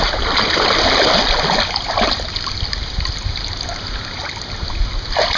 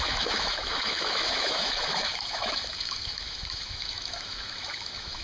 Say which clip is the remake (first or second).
second